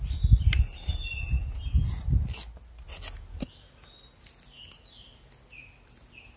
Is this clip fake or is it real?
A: real